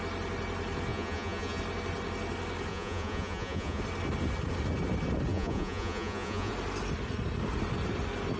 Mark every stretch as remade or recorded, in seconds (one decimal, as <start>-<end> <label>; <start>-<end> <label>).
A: 0.0-0.9 recorded; 0.9-1.6 remade; 1.6-2.7 recorded; 2.7-3.8 remade; 3.8-5.3 recorded; 5.3-6.5 remade; 6.5-8.4 recorded